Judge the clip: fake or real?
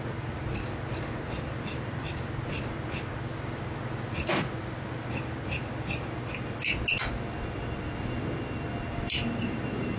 real